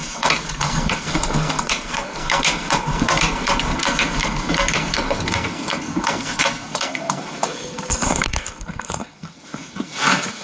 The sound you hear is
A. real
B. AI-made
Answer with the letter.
B